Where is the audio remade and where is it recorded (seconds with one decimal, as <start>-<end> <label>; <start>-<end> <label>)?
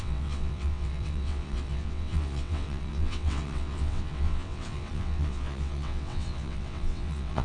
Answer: 0.0-7.4 remade